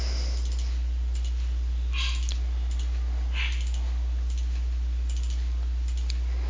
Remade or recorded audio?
recorded